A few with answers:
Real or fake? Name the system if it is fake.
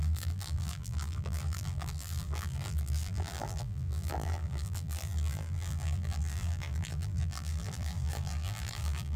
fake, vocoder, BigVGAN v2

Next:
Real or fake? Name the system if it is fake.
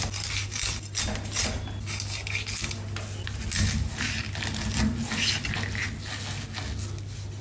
real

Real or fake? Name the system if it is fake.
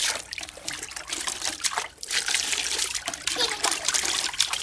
fake, vocoder, BigVGAN v2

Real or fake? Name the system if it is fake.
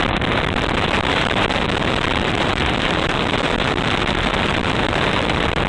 fake, vocoder, BigVGAN v2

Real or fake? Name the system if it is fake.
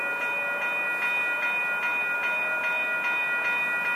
real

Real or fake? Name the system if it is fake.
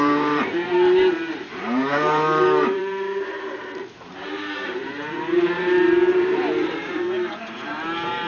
fake, vocoder, BigVGAN v2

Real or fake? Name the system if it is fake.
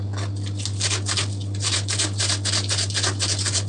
real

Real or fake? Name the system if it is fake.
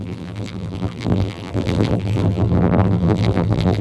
fake, vocoder, BigVGAN v2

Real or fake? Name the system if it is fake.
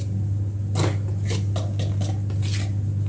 real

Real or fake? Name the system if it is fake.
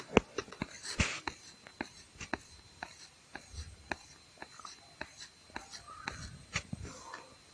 real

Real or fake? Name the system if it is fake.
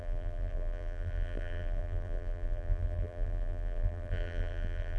fake, vocoder, BigVGAN v2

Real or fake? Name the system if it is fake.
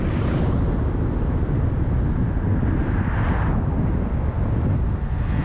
real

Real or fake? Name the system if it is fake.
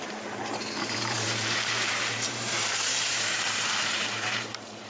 fake, vocoder, BigVGAN v2